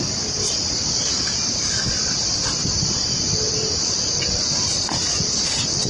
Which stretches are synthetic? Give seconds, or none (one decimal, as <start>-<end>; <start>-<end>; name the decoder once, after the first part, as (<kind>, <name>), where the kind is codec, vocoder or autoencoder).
none